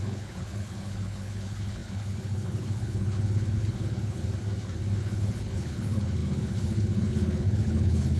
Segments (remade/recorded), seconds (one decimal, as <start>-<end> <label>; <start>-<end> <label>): 0.0-4.2 remade; 4.2-5.0 recorded; 5.0-8.2 remade